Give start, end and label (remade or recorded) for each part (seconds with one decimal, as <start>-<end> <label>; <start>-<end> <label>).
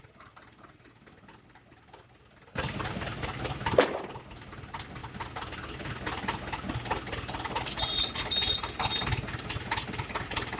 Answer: 0.0-10.6 recorded